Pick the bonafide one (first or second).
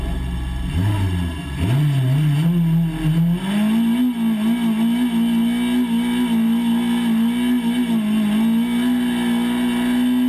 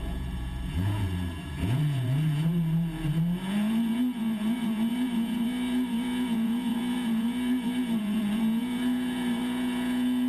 first